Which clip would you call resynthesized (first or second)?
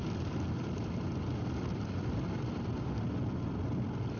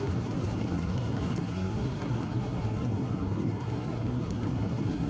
second